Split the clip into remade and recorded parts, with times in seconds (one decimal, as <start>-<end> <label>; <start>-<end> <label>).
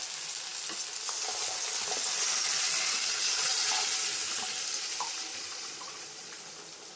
0.0-5.3 recorded; 5.3-6.4 remade; 6.4-7.0 recorded